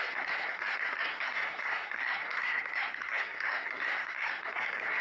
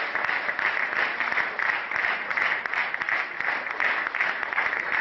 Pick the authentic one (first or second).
second